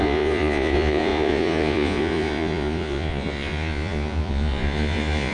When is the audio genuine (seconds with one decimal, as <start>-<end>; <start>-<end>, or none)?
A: none